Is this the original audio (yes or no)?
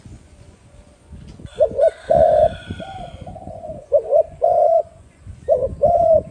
no